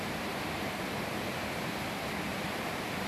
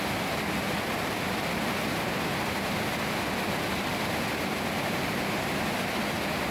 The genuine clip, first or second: second